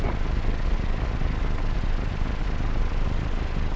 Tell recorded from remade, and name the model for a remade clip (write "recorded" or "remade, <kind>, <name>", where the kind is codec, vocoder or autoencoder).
recorded